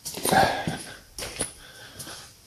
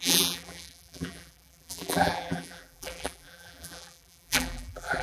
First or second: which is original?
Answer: first